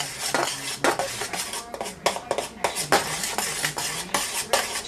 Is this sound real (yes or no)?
yes